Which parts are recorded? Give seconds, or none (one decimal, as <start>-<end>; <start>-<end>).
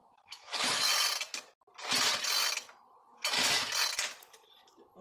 0.8-3.1; 3.7-5.0